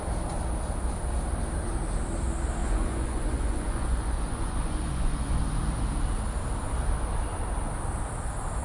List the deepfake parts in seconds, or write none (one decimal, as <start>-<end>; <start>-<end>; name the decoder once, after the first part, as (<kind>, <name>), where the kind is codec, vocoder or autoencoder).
2.6-5.4 (vocoder, Vocos)